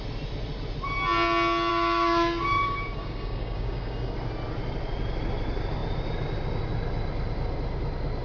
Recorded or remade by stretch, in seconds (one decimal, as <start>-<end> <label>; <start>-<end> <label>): 0.0-1.7 recorded; 1.7-4.1 remade; 4.1-8.2 recorded